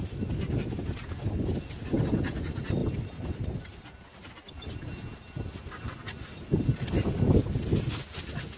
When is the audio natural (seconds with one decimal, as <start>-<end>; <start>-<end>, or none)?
0.0-8.6